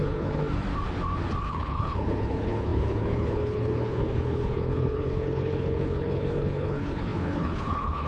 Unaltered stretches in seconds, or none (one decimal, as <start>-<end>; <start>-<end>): 0.4-1.4